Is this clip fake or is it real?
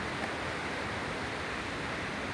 real